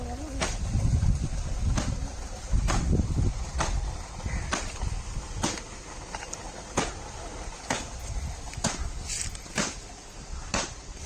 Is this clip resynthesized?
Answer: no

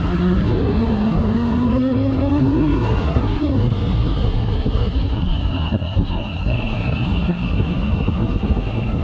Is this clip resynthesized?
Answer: yes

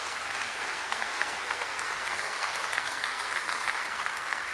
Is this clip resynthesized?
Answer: yes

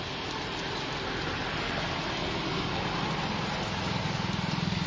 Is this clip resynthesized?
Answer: no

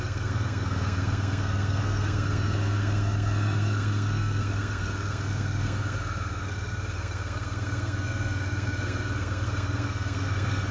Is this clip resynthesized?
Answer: yes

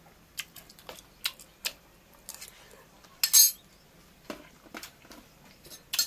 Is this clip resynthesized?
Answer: no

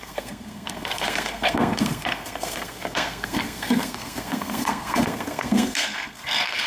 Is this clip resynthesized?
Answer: yes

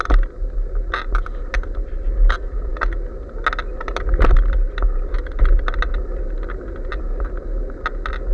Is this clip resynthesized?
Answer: no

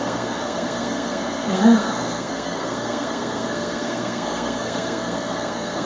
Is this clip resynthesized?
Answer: yes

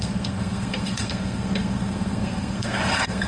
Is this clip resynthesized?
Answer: yes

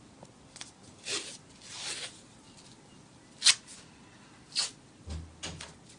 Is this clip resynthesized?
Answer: no